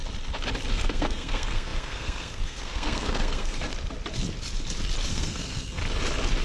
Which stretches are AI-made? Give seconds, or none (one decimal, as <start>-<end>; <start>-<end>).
0.7-3.7; 5.1-5.8